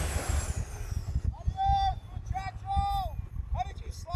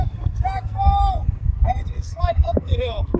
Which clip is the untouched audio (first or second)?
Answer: first